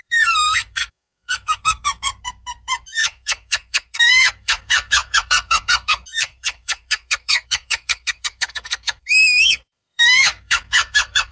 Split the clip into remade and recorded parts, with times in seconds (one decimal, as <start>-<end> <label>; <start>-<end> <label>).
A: 0.0-11.3 remade